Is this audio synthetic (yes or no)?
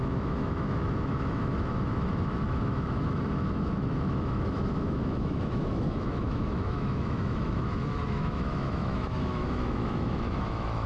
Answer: yes